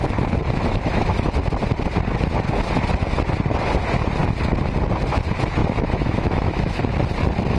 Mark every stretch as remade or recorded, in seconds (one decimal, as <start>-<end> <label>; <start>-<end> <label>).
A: 0.0-0.7 recorded; 0.7-1.3 remade; 1.3-5.6 recorded; 5.6-6.8 remade; 6.8-7.6 recorded